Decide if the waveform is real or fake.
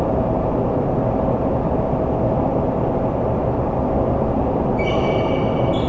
real